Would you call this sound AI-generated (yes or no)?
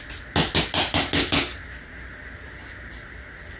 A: no